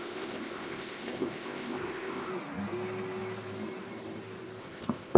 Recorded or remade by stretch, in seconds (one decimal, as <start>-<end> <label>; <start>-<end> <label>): 0.0-2.3 remade; 2.3-4.6 recorded; 4.6-5.2 remade